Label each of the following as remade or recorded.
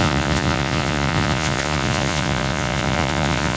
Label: remade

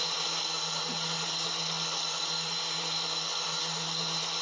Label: recorded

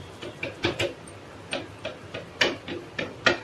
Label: recorded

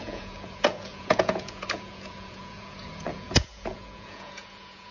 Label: remade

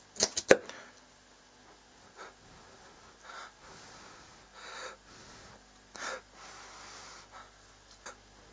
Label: recorded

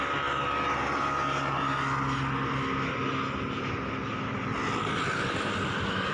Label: recorded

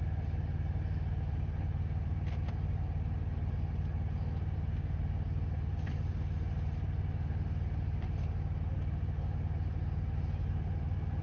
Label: recorded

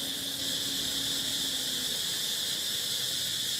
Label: recorded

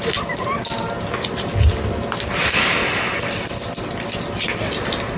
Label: recorded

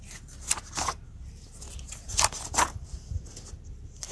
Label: recorded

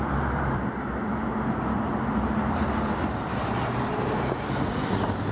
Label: recorded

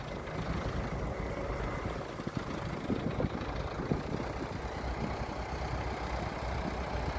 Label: recorded